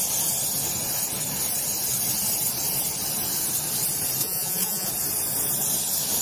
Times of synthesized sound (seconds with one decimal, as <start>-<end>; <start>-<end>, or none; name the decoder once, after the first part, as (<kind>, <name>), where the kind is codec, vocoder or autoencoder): 4.2-4.9 (vocoder, Vocos)

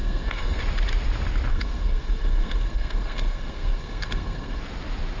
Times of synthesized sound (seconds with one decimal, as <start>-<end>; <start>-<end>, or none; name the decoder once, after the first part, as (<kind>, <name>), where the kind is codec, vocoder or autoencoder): 0.0-0.6 (codec, SNAC); 1.5-4.6

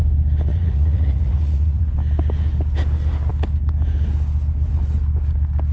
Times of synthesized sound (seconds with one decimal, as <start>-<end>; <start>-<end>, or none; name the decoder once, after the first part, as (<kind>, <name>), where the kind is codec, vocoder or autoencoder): 0.5-1.9 (vocoder, Vocos)

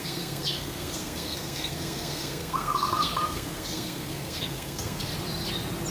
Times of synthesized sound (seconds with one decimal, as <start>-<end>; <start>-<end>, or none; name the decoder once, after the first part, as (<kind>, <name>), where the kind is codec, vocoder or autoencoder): 0.0-5.1 (codec, SNAC)